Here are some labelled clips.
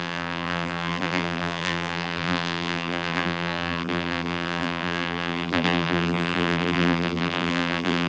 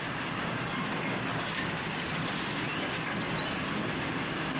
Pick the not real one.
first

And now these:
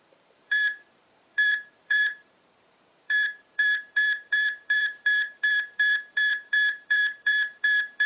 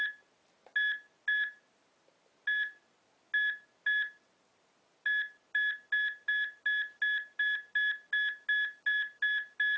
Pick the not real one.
first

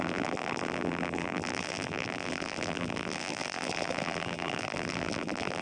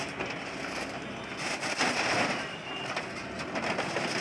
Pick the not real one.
first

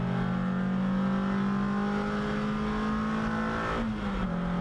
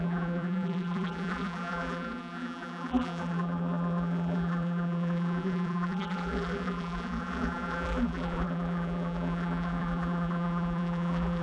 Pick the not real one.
second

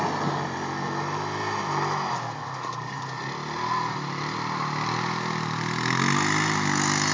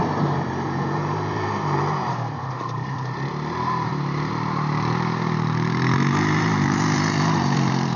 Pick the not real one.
second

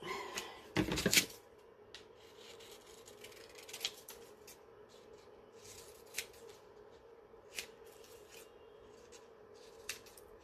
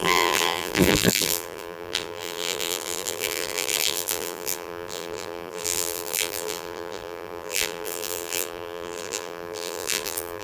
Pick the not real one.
second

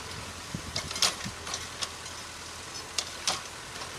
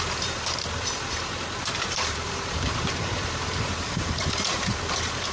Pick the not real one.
second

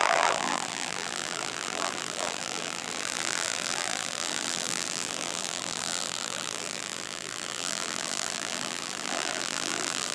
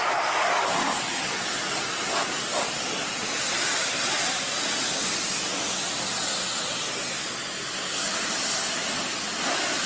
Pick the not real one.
first